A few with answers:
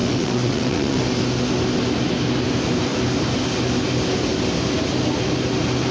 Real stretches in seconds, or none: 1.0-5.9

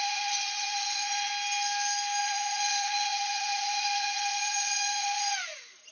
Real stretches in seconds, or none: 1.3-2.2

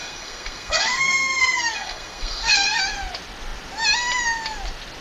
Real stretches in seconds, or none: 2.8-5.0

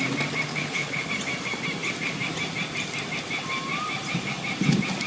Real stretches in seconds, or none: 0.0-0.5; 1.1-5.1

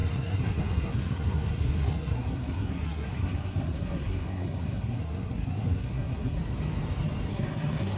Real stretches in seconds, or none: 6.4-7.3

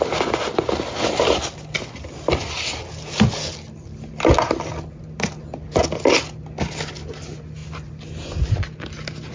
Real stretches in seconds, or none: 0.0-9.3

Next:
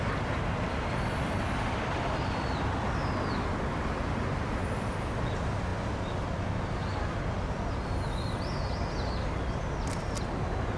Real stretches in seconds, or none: 0.0-10.8